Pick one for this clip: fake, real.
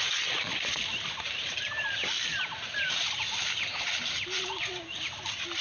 real